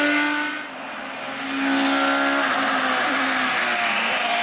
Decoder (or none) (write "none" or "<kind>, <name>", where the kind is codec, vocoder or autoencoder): none